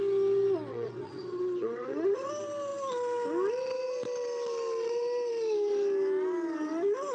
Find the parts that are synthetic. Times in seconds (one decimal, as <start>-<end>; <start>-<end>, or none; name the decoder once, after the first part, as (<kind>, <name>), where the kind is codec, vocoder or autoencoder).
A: 0.7-2.3 (vocoder, WaveNeXt)